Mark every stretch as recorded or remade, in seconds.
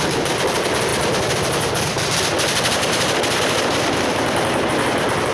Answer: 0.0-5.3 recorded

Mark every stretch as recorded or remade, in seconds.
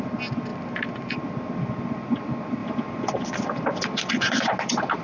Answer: 0.0-2.6 recorded; 2.6-4.4 remade; 4.4-5.0 recorded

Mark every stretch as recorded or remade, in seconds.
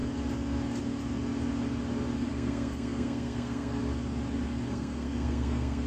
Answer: 0.0-2.3 recorded; 2.3-3.8 remade; 3.8-4.7 recorded; 4.7-5.9 remade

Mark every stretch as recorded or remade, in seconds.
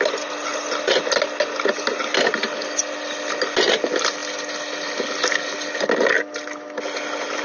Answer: 0.0-7.4 recorded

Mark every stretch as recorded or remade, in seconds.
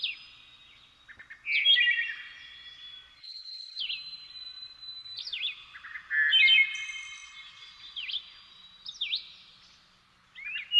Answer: 0.0-3.2 recorded; 3.2-3.8 remade; 3.8-10.8 recorded